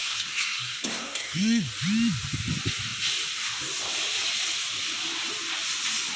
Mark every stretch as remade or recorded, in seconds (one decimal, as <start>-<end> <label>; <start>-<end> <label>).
0.0-1.7 remade; 1.7-6.2 recorded